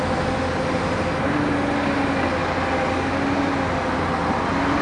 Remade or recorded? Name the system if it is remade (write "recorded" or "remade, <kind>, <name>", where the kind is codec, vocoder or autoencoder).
recorded